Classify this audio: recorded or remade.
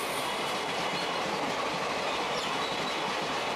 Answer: recorded